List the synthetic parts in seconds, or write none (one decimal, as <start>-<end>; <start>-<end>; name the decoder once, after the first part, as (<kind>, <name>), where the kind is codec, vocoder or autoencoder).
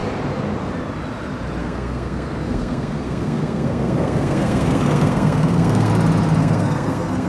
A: 1.6-5.9 (codec, SNAC); 6.4-7.3